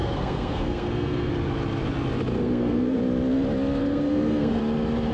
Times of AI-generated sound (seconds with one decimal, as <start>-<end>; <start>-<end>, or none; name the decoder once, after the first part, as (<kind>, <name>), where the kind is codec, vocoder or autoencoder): 0.0-1.3 (codec, SNAC); 2.4-3.0; 3.8-4.6